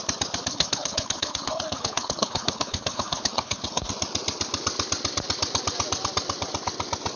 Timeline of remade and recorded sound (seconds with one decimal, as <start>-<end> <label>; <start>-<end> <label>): 0.0-0.5 recorded; 0.5-3.9 remade; 3.9-7.2 recorded